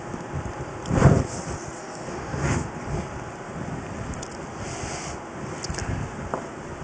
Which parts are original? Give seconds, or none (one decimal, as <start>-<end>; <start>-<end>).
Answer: 0.0-2.1; 2.7-6.8